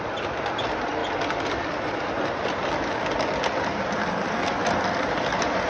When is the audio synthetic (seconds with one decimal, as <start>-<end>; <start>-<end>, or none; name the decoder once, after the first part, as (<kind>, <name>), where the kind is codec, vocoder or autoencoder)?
none